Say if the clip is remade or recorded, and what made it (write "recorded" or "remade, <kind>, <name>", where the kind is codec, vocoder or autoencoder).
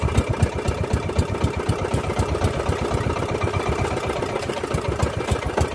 recorded